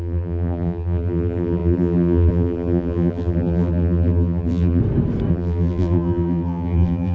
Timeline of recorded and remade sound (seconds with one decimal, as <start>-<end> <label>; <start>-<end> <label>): 0.0-4.8 remade; 4.8-5.3 recorded; 5.3-7.1 remade